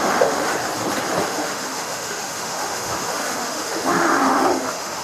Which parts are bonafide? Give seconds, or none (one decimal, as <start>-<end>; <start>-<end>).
0.5-1.2